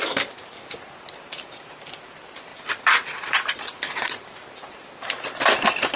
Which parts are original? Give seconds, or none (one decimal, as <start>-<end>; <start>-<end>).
0.0-2.5; 5.1-6.0